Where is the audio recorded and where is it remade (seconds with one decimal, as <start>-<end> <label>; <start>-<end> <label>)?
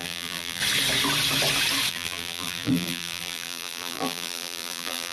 0.0-0.6 remade; 0.6-1.9 recorded; 1.9-5.1 remade